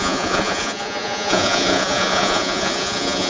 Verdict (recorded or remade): remade